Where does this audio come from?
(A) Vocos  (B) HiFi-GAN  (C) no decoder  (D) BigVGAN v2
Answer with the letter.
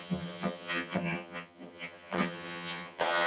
B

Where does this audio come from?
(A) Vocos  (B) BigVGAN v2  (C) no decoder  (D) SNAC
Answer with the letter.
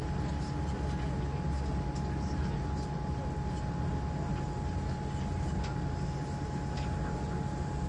C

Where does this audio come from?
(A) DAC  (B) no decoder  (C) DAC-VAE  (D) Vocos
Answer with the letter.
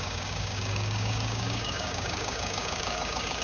A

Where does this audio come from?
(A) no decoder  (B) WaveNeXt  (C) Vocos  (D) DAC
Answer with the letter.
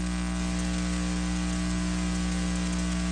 A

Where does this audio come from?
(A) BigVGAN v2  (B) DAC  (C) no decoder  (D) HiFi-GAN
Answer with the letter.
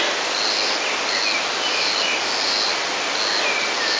C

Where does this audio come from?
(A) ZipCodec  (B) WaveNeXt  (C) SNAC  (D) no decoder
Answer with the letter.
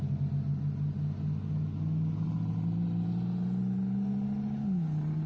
D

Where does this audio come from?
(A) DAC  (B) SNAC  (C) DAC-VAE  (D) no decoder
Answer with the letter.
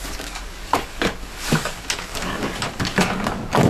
A